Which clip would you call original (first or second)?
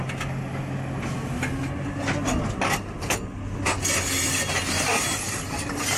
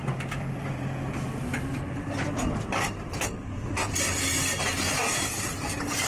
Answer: first